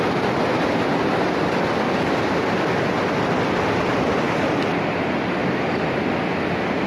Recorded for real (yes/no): yes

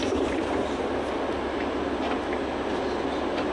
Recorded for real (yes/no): yes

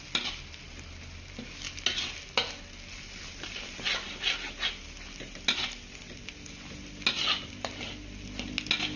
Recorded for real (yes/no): yes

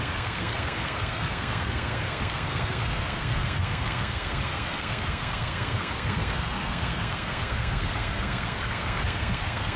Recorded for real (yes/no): no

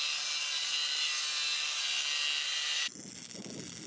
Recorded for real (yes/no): yes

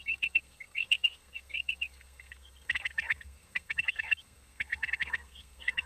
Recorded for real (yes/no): no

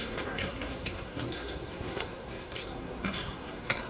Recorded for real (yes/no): no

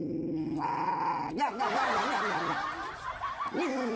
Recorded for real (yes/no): yes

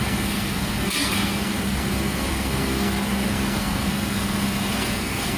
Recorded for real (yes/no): no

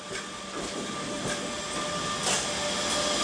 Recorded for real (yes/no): yes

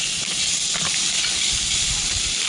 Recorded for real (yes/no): yes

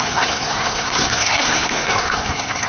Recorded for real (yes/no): no